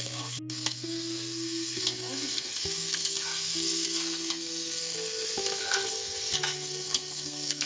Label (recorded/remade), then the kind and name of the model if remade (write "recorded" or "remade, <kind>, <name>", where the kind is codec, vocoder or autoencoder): remade, codec, SNAC